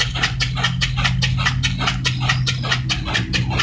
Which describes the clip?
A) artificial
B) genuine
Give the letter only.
B